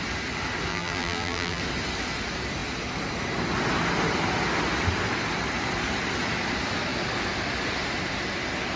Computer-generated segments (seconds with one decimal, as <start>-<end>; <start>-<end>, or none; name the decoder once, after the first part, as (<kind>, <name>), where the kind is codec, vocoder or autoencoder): 0.7-1.6 (vocoder, BigVGAN v2)